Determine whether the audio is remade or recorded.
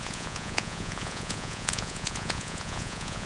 remade